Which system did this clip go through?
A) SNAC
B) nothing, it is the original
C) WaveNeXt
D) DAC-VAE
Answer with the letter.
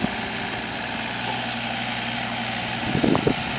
B